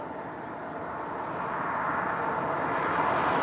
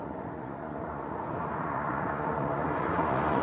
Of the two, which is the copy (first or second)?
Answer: second